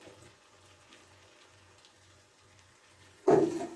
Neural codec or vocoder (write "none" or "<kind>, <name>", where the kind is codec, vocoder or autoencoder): vocoder, Vocos